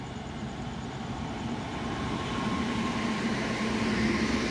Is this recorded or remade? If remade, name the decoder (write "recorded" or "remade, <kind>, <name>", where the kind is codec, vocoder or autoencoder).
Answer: remade, vocoder, BigVGAN v2